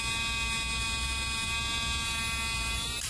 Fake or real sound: real